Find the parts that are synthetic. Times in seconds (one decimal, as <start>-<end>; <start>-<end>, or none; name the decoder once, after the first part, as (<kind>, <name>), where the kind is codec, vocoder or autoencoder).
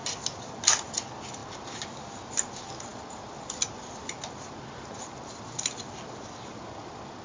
none